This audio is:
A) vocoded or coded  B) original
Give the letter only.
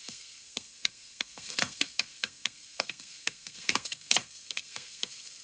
A